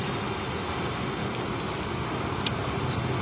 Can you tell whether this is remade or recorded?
recorded